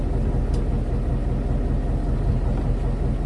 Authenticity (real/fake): real